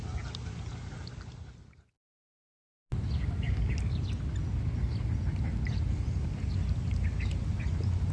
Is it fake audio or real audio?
real